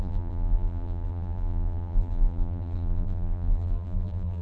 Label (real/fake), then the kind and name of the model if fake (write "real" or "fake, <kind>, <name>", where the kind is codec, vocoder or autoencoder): fake, vocoder, BigVGAN v2